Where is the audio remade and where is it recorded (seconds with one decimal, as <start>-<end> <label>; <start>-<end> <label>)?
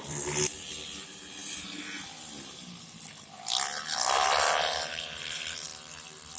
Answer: 0.0-1.4 remade; 1.4-5.2 recorded; 5.2-5.7 remade; 5.7-6.4 recorded